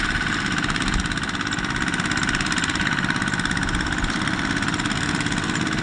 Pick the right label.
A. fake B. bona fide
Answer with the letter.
B